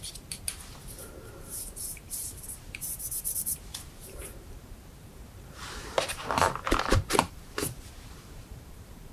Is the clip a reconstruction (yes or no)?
yes